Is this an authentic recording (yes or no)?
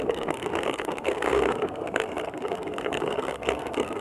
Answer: no